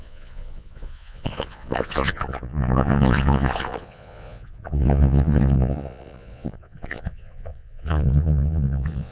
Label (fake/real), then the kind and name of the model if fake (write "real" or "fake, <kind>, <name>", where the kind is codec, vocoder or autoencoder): fake, vocoder, Vocos